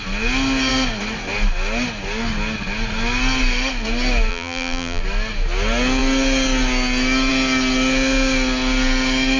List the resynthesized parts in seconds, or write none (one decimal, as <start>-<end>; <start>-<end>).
4.3-5.0

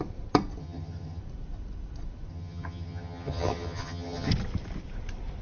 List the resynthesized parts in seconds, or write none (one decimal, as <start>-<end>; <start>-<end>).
0.6-1.2; 2.3-4.3

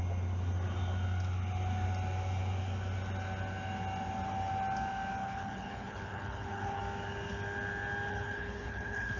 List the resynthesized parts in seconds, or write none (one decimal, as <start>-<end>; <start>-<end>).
5.2-6.8; 8.1-9.2

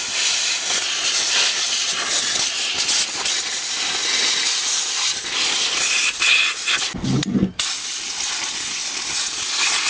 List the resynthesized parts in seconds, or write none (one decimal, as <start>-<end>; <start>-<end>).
none

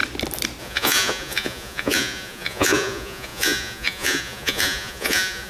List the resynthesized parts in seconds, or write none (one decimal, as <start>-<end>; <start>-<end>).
0.6-5.5

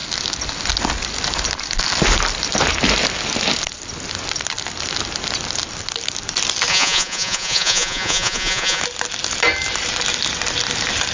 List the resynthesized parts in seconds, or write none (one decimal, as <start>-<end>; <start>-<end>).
6.7-8.8

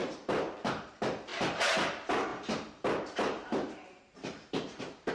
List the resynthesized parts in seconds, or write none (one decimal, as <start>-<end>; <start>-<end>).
0.0-0.9; 1.3-1.8; 2.3-5.1

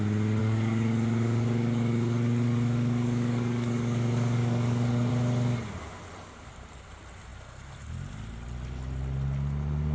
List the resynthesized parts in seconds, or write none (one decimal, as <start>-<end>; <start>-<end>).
0.4-5.1